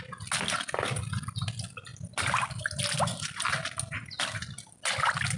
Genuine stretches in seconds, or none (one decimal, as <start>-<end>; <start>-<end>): 0.0-5.4